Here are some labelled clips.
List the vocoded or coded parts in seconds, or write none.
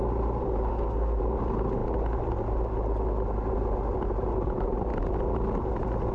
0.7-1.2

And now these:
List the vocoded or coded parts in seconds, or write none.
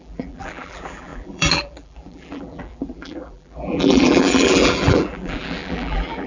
0.0-6.3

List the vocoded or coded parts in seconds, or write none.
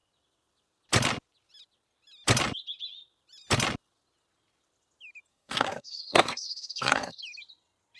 5.3-7.2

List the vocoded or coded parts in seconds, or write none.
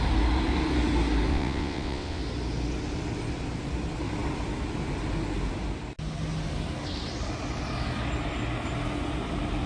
1.3-2.2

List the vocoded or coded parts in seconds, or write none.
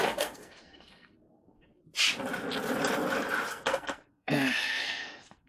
0.0-1.8; 3.5-5.5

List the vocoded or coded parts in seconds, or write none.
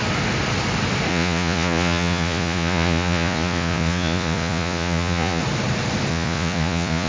1.1-5.4; 6.1-7.1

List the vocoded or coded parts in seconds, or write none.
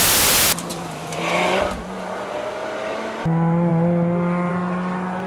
0.7-1.2